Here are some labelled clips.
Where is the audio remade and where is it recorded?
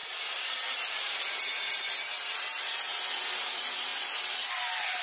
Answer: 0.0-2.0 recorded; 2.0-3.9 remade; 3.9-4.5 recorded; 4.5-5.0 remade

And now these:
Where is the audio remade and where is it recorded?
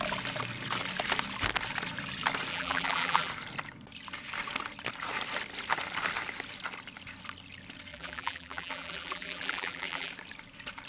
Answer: 0.0-2.5 recorded; 2.5-3.3 remade; 3.3-7.9 recorded; 7.9-10.1 remade; 10.1-10.9 recorded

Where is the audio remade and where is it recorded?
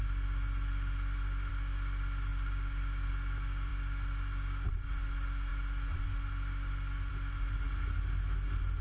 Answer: 0.0-8.8 recorded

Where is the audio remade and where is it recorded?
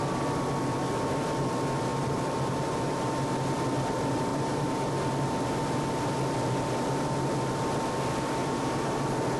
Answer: 0.0-1.9 recorded; 1.9-3.1 remade; 3.1-4.3 recorded; 4.3-4.8 remade; 4.8-8.4 recorded; 8.4-9.0 remade; 9.0-9.4 recorded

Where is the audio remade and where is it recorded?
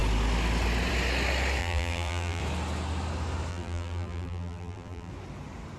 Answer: 0.0-1.6 recorded; 1.6-2.4 remade; 2.4-3.5 recorded; 3.5-5.1 remade; 5.1-5.8 recorded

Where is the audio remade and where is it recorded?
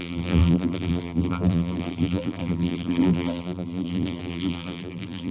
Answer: 0.0-5.3 remade